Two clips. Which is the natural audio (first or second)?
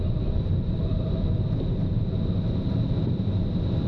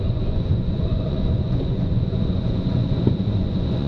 first